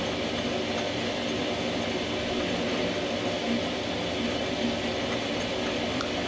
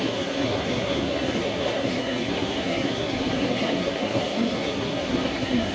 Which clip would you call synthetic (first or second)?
second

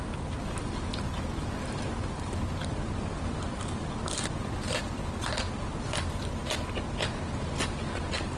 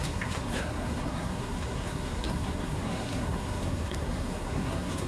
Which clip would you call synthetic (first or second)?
second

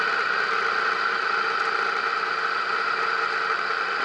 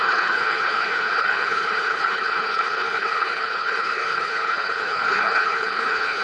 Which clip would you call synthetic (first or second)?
second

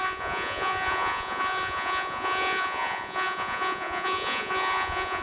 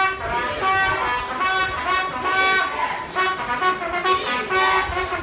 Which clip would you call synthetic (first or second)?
first